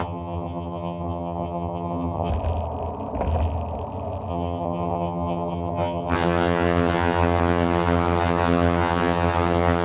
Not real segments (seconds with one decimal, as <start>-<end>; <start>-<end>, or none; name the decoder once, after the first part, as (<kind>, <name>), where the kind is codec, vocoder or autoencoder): 0.0-2.3 (vocoder, HiFi-GAN); 4.3-9.8